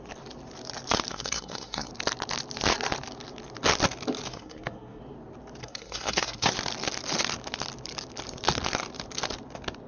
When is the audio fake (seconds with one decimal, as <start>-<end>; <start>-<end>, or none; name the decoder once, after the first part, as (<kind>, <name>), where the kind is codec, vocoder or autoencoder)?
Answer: 1.1-1.9 (codec, SNAC); 4.3-5.0; 5.6-6.5